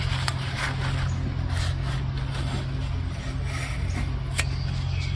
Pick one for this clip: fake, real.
real